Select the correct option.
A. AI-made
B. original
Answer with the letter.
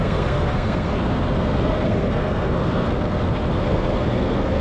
A